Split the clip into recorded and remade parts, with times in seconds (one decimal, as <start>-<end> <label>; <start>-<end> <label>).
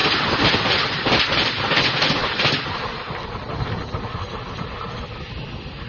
0.0-1.5 remade; 1.5-5.9 recorded